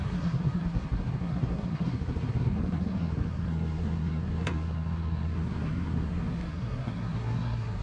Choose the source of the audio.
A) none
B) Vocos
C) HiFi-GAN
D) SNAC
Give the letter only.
D